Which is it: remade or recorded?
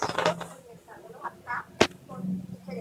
recorded